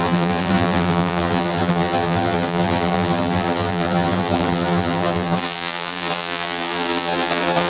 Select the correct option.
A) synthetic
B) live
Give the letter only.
A